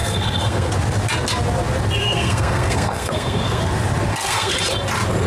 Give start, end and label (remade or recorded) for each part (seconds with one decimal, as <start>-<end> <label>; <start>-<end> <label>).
0.0-0.7 remade; 0.7-2.0 recorded; 2.0-3.6 remade; 3.6-4.1 recorded; 4.1-4.6 remade; 4.6-5.3 recorded